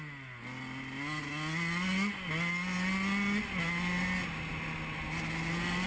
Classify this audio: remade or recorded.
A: recorded